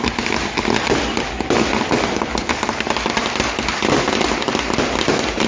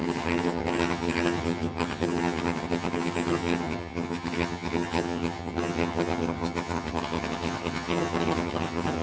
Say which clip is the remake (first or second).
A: second